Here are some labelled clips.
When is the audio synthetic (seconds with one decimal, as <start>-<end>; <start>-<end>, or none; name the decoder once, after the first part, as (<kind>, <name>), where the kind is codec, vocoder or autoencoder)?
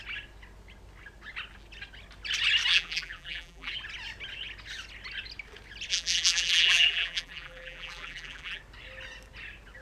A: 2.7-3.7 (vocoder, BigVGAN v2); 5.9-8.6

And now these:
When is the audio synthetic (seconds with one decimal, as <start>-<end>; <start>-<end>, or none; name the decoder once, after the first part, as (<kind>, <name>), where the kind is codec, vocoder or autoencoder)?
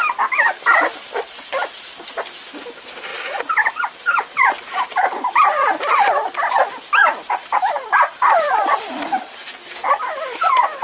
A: 3.1-5.4 (vocoder, BigVGAN v2); 7.0-9.5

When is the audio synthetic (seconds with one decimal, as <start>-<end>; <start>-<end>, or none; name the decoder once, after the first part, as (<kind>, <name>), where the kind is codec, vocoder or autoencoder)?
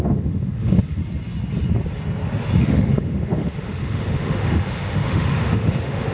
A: 0.0-1.0 (autoencoder, DAC-VAE); 2.6-6.1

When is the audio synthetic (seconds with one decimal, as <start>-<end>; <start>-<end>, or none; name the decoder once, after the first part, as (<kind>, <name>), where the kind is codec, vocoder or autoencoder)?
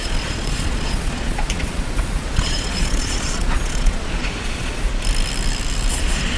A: 0.0-4.9 (vocoder, Vocos); 5.9-6.4